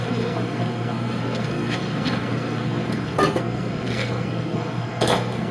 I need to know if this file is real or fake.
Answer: fake